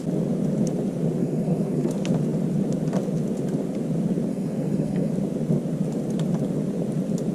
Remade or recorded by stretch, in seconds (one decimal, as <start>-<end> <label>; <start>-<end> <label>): 0.0-1.2 recorded; 1.2-1.9 remade; 1.9-4.3 recorded; 4.3-5.1 remade; 5.1-7.3 recorded